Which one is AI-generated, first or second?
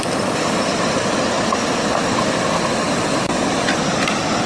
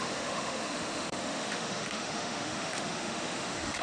second